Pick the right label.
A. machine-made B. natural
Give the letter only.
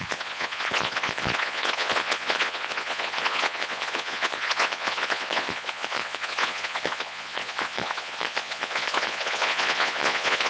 A